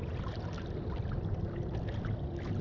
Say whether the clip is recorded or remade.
recorded